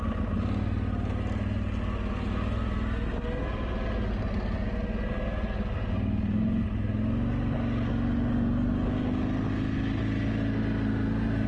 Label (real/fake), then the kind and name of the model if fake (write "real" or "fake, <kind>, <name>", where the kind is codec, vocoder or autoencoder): real